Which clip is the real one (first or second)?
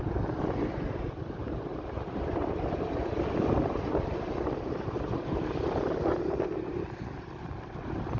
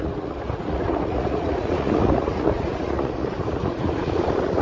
first